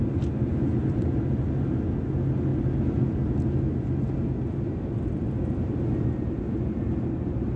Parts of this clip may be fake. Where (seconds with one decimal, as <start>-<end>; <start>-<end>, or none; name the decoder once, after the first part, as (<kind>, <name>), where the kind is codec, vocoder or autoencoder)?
none